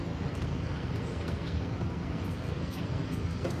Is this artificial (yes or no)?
yes